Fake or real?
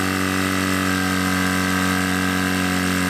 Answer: real